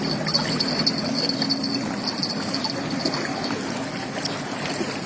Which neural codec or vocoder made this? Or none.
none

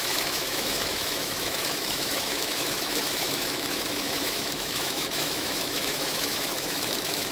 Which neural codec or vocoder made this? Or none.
autoencoder, DAC-VAE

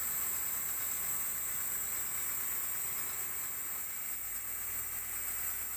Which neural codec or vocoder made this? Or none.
none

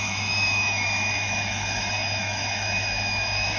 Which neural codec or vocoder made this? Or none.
autoencoder, DAC-VAE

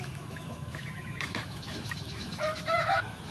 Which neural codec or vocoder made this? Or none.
autoencoder, DAC-VAE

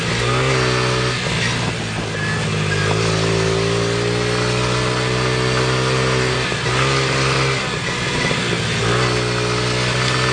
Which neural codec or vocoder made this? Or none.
none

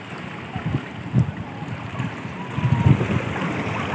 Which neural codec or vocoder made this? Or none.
none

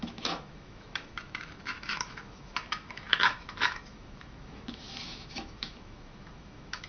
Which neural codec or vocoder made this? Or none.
autoencoder, DAC-VAE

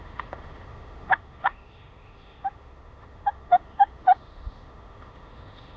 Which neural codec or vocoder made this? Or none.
autoencoder, DAC-VAE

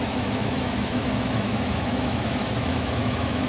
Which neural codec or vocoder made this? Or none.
autoencoder, DAC-VAE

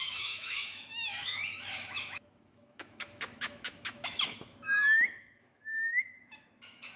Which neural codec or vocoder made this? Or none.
autoencoder, DAC-VAE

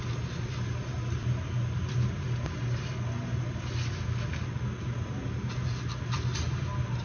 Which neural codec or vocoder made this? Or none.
none